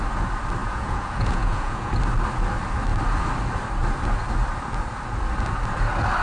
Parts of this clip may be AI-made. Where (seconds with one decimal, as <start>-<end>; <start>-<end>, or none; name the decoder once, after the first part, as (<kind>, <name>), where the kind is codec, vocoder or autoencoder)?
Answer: 0.6-1.9 (vocoder, Vocos)

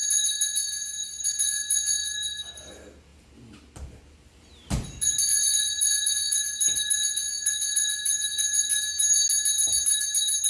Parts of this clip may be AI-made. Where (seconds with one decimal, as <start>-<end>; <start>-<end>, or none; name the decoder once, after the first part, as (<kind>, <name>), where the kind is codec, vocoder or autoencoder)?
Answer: 0.0-2.5 (vocoder, Vocos); 5.3-8.8

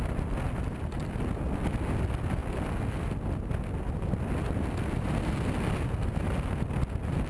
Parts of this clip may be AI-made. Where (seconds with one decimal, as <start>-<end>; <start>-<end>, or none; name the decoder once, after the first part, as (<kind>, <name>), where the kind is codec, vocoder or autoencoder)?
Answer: none

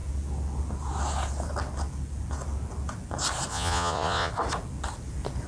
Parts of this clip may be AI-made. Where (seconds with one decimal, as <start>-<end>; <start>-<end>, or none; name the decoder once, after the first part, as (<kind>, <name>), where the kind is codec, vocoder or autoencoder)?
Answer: 3.5-4.3 (vocoder, Vocos)

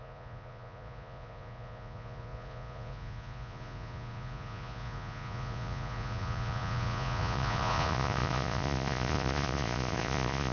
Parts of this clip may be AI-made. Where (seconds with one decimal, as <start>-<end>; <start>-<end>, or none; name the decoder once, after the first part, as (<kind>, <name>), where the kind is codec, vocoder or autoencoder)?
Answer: 0.0-10.5 (vocoder, Vocos)